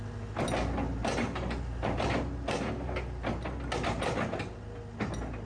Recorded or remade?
recorded